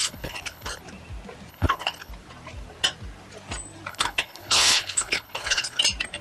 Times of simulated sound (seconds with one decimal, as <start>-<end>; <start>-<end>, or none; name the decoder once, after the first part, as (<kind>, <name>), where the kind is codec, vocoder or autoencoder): 0.0-0.8 (codec, HILCodec); 1.5-2.1; 3.9-5.8